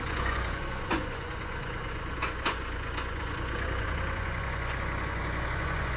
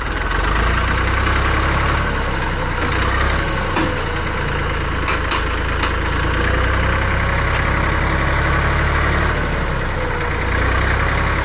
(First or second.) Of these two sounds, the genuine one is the second